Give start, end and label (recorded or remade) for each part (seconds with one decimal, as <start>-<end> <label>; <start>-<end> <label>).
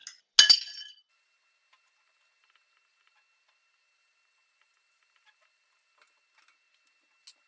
0.0-7.5 recorded